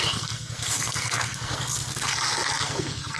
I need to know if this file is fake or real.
fake